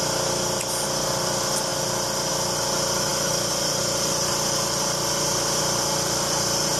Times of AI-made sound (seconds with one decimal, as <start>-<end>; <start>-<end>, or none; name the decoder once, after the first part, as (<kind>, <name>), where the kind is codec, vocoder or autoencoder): none